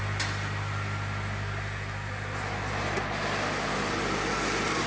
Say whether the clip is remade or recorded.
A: recorded